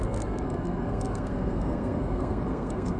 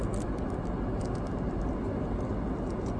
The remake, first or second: first